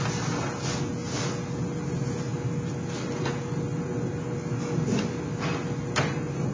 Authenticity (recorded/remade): recorded